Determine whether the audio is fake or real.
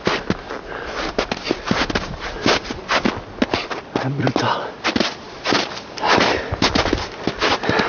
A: real